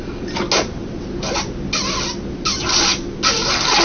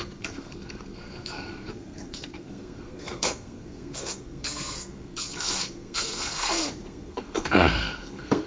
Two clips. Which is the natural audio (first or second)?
first